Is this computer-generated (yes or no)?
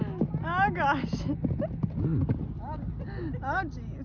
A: no